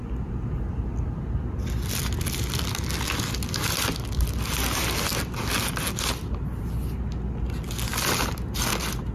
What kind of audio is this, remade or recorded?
recorded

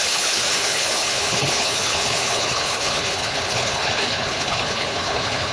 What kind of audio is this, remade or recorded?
remade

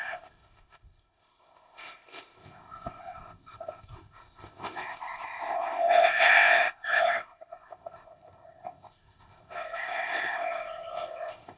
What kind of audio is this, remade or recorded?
remade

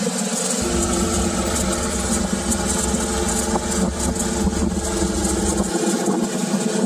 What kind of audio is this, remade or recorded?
recorded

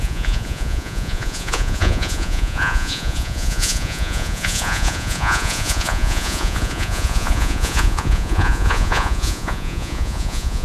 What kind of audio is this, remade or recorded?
remade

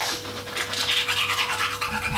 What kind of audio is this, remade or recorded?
recorded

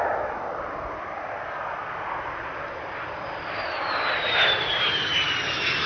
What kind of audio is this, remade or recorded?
recorded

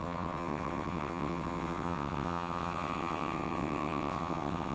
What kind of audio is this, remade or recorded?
remade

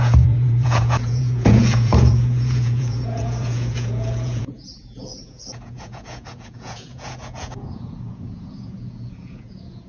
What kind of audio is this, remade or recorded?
remade